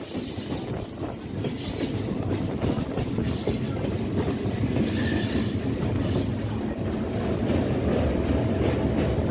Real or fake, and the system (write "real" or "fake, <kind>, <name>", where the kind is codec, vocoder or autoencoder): fake, vocoder, BigVGAN v2